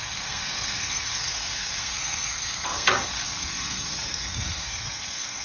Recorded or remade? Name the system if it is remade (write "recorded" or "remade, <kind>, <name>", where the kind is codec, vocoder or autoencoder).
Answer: remade, codec, SNAC